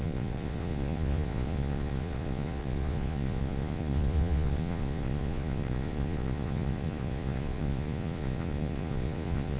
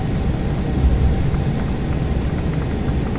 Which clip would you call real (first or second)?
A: second